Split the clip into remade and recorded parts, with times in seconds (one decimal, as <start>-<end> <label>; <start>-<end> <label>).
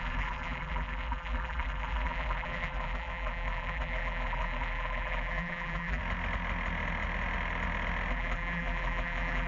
0.0-6.0 remade; 6.0-8.1 recorded; 8.1-9.5 remade